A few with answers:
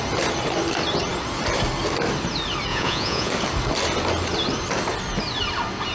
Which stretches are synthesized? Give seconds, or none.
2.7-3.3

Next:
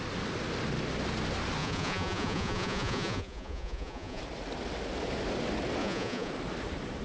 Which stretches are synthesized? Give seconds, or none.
1.6-4.2; 5.8-6.3

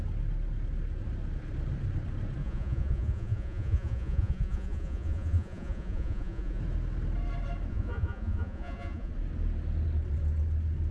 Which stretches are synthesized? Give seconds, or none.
2.4-6.6; 7.7-9.1

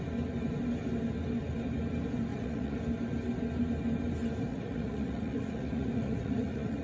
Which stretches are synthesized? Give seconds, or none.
2.3-2.8; 4.5-6.8

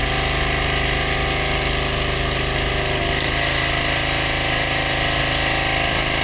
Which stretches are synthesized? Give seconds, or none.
none

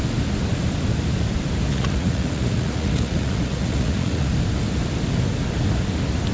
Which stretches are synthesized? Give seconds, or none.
1.7-4.3

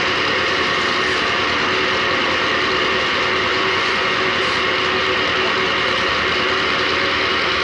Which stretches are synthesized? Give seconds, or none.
3.5-4.4